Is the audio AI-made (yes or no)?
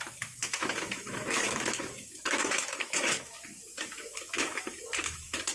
yes